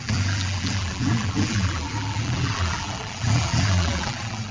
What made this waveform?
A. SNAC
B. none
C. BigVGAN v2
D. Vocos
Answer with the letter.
C